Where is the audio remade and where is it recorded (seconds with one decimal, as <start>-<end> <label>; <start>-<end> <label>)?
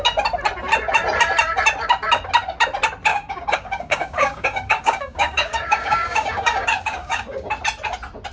0.0-3.1 recorded; 3.1-7.5 remade; 7.5-8.3 recorded